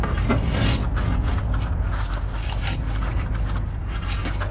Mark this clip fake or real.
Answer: real